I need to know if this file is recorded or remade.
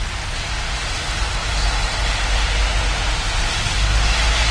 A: recorded